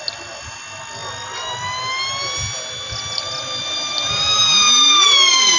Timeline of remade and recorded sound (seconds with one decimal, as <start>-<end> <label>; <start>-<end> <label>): 0.0-5.6 recorded